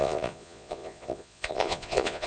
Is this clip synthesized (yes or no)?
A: yes